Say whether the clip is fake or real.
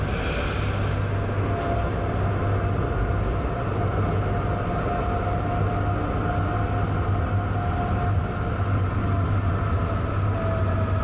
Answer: real